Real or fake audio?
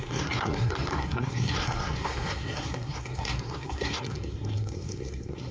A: fake